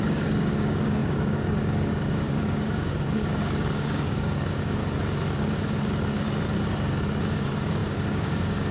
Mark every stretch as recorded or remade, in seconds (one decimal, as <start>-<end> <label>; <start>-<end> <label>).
0.0-4.8 remade; 4.8-7.3 recorded; 7.3-8.7 remade